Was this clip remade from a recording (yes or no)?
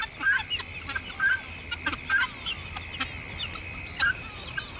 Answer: no